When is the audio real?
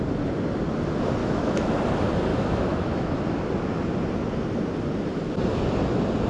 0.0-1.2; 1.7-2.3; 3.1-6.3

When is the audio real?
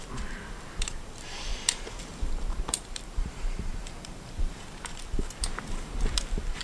none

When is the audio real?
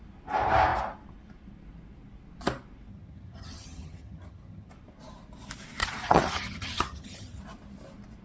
0.0-2.9; 4.7-5.8; 7.4-8.2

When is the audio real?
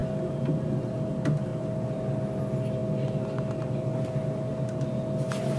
0.0-5.6